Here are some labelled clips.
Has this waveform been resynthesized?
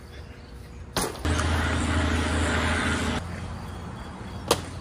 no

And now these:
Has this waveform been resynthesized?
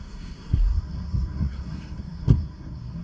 yes